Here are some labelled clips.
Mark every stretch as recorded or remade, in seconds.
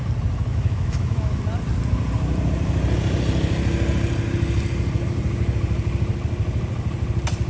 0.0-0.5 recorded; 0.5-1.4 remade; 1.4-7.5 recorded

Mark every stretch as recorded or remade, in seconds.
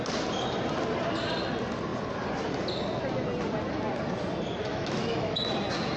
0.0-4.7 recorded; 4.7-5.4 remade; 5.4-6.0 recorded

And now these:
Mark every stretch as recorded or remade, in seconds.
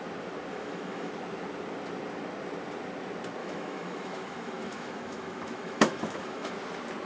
0.0-0.5 recorded; 0.5-1.1 remade; 1.1-3.4 recorded; 3.4-6.5 remade; 6.5-7.1 recorded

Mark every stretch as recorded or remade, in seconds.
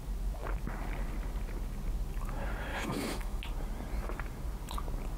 0.0-2.7 recorded; 2.7-3.4 remade; 3.4-5.2 recorded